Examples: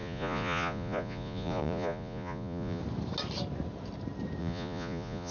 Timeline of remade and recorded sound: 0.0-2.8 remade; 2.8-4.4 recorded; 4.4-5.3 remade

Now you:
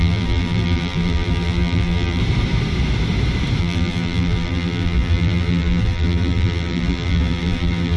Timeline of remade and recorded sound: 0.0-2.2 remade; 2.2-3.6 recorded; 3.6-8.0 remade

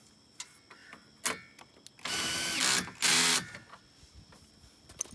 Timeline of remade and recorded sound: 0.0-5.1 recorded